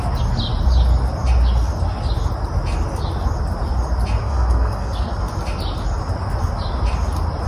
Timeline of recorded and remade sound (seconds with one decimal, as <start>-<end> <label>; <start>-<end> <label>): 0.0-4.2 recorded; 4.2-5.1 remade; 5.1-7.5 recorded

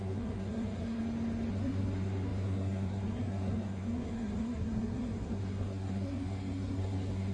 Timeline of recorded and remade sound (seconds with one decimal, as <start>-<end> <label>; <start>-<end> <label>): 0.0-1.0 remade; 1.0-1.5 recorded; 1.5-7.3 remade

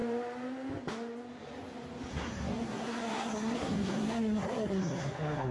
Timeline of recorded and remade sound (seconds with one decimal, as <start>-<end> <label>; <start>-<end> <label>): 0.0-2.1 recorded; 2.1-5.5 remade